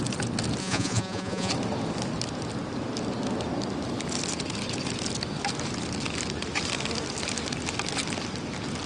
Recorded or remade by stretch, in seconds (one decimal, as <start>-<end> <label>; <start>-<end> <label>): 0.0-0.6 recorded; 0.6-1.5 remade; 1.5-8.9 recorded